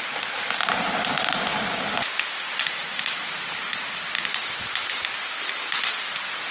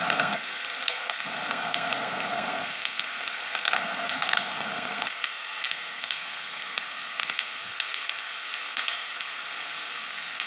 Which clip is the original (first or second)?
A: first